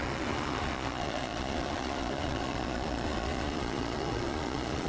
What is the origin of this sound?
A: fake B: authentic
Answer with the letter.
A